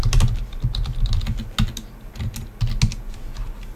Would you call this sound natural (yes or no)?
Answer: yes